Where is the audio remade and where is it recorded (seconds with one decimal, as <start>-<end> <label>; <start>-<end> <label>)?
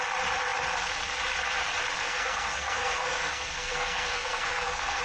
0.0-2.0 recorded; 2.0-5.0 remade